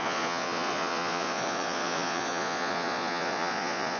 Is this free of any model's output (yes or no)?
no